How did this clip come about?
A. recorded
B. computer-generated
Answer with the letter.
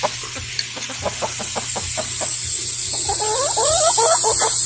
A